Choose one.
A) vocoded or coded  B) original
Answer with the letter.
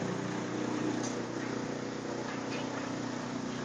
B